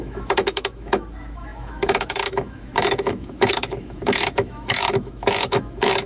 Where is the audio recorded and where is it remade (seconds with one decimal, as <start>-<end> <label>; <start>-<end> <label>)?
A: 0.0-6.1 remade